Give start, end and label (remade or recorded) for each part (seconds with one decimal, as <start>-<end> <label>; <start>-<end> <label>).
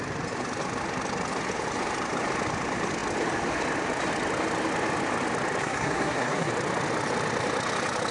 0.0-5.6 recorded; 5.6-6.5 remade; 6.5-8.1 recorded